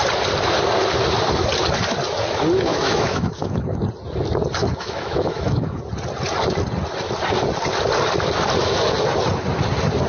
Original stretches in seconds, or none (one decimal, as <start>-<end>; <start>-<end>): 0.0-2.7; 3.8-4.6; 5.8-10.1